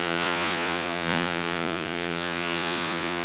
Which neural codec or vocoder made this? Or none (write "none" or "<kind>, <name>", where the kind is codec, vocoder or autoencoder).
vocoder, Vocos